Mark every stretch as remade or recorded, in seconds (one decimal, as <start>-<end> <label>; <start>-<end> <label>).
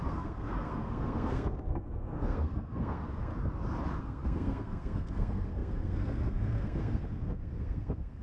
0.0-3.3 remade; 3.3-4.0 recorded; 4.0-8.2 remade